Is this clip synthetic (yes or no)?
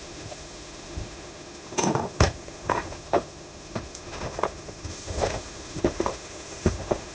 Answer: yes